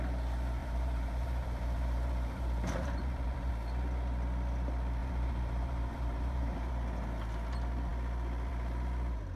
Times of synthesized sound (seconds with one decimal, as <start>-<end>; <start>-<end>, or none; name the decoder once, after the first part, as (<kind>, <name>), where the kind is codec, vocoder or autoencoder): 0.6-3.5 (vocoder, BigVGAN v2); 5.0-6.7